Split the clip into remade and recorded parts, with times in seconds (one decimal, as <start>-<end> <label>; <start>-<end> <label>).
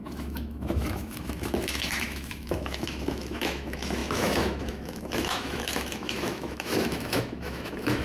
0.0-8.0 remade